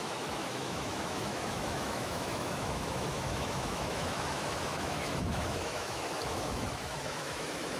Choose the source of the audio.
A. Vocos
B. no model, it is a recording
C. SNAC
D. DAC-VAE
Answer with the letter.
D